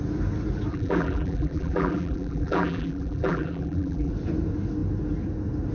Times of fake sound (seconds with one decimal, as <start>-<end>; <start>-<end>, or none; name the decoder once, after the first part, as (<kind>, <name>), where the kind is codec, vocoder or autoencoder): 0.7-4.1 (vocoder, BigVGAN v2)